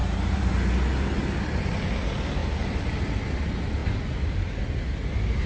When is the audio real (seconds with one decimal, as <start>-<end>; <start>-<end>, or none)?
0.5-3.8; 4.6-5.5